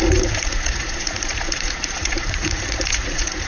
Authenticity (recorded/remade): remade